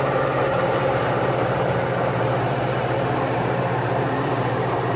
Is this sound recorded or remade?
remade